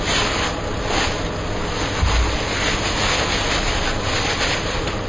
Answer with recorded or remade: recorded